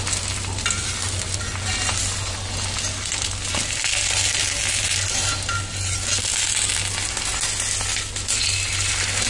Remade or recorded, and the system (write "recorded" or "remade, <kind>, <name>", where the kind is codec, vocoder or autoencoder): recorded